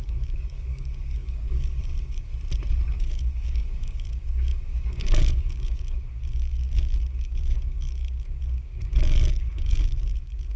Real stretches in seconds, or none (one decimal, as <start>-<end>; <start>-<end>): 2.3-3.0